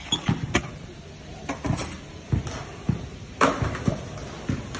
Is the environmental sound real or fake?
real